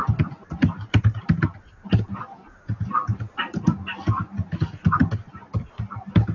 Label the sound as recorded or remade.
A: recorded